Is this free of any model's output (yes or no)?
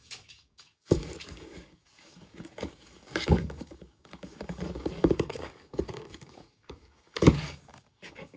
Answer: no